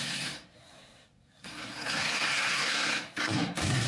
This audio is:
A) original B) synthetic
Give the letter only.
B